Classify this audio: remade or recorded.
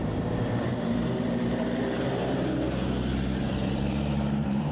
remade